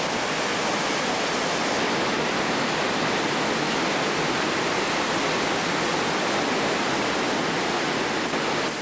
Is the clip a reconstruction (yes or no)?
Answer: no